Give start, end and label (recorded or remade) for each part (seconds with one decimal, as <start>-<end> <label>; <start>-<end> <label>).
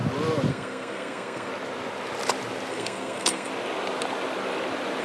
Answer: 0.0-0.5 recorded; 0.5-1.5 remade; 1.5-2.7 recorded; 2.7-3.5 remade; 3.5-5.0 recorded